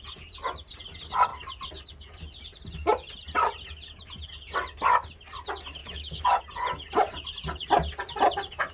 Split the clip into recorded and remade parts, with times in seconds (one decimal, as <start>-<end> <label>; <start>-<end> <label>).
0.0-5.8 recorded; 5.8-6.4 remade; 6.4-8.7 recorded